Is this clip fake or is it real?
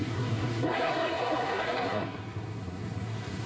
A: fake